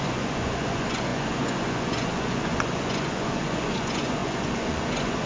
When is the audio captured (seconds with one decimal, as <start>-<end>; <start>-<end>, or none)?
none

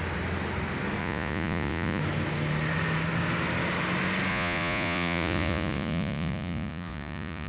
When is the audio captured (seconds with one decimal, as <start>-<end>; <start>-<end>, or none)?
0.0-1.0; 2.0-4.3

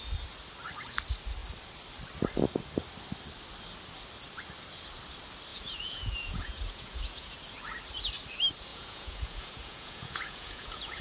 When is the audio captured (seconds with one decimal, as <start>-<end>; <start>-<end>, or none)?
0.0-5.5; 7.4-8.7

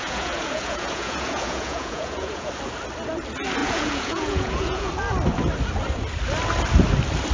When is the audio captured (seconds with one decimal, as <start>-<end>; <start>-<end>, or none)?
2.5-3.6; 4.9-7.3

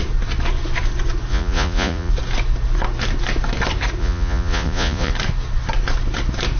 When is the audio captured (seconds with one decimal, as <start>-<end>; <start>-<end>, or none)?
0.0-1.3; 2.1-4.0; 5.1-6.6